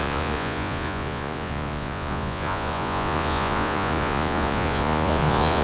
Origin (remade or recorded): remade